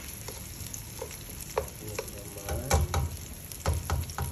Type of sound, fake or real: real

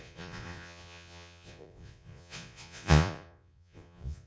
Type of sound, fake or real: fake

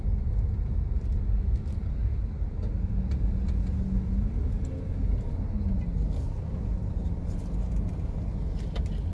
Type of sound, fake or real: real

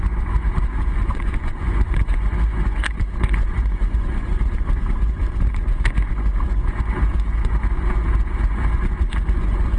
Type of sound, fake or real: fake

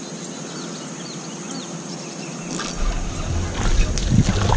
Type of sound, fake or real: real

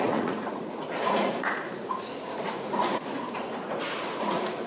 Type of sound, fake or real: fake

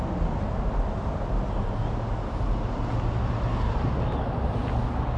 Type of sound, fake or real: real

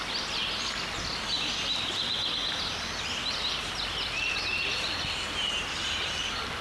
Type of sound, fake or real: real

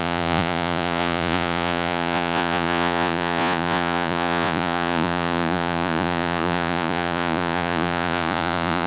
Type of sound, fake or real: fake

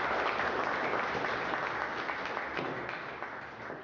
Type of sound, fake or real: real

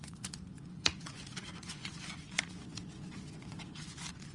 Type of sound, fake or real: fake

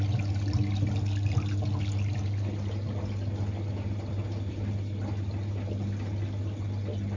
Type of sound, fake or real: real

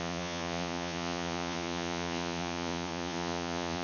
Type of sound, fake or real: fake